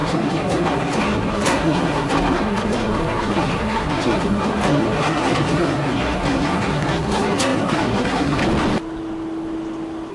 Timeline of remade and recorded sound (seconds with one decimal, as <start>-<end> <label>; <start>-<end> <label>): 0.0-8.4 remade; 8.4-10.1 recorded

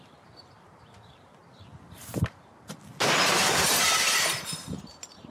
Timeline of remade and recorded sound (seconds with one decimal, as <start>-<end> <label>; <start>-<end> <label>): 0.0-1.4 remade; 1.4-3.7 recorded; 3.7-5.3 remade

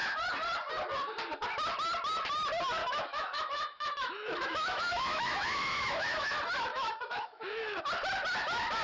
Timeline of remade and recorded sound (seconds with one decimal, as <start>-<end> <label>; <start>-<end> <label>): 0.0-2.8 recorded; 2.8-6.3 remade; 6.3-6.7 recorded; 6.7-7.8 remade; 7.8-8.8 recorded

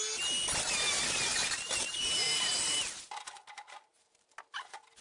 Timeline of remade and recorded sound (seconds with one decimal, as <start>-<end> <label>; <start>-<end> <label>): 0.0-1.3 recorded; 1.3-4.3 remade; 4.3-5.0 recorded

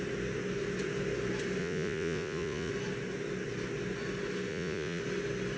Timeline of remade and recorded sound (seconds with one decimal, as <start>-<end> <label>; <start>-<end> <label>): 0.0-1.6 recorded; 1.6-2.7 remade; 2.7-4.5 recorded; 4.5-5.0 remade; 5.0-5.6 recorded